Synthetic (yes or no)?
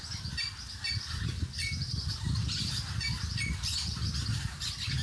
no